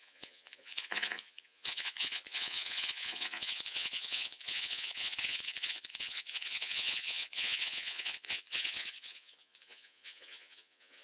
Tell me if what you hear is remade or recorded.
remade